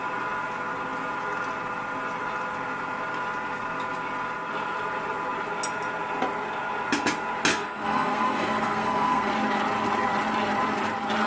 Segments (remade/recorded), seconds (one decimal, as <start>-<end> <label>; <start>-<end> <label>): 0.0-7.5 recorded; 7.5-9.3 remade; 9.3-11.3 recorded